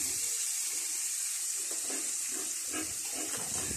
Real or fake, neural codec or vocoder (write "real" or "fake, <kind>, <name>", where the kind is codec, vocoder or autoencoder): real